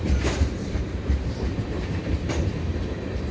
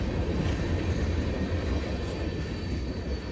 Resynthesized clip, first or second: first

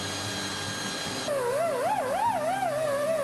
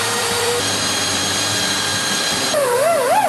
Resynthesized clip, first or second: second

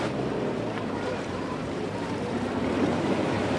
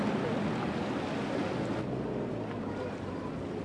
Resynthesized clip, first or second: first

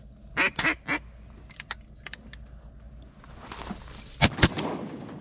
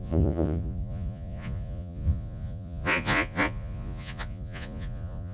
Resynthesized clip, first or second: second